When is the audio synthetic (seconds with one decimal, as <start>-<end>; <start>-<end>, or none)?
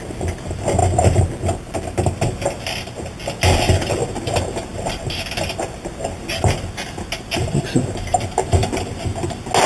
none